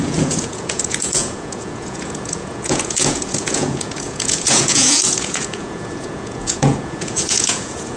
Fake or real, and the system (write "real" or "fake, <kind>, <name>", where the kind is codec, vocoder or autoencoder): fake, vocoder, Vocos